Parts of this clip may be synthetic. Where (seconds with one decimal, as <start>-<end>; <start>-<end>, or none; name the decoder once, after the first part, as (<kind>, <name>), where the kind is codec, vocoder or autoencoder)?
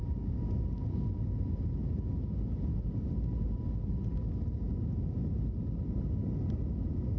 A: none